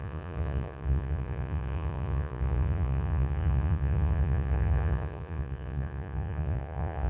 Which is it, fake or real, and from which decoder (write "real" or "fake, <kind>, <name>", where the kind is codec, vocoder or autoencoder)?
fake, vocoder, Vocos